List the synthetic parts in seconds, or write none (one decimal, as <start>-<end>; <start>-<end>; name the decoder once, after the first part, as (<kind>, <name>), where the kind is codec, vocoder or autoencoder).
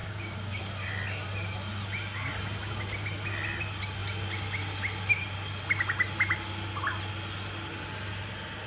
0.0-0.6 (codec, DAC)